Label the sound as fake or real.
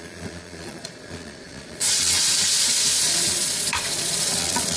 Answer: fake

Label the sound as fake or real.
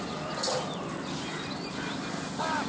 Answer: real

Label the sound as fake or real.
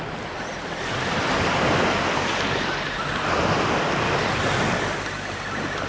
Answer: real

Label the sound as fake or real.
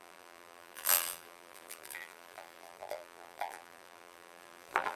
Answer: fake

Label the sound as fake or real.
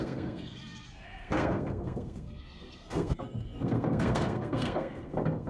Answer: fake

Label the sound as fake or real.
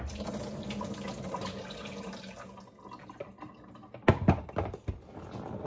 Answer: real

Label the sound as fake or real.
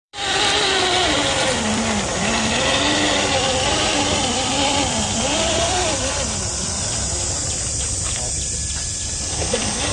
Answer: fake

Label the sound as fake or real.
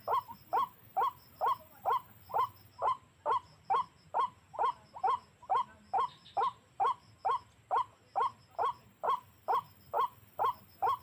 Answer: real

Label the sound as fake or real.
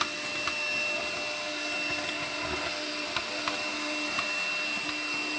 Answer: real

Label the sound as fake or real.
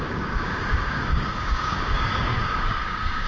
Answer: fake